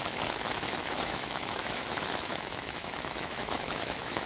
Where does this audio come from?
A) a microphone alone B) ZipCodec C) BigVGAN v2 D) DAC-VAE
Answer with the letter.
D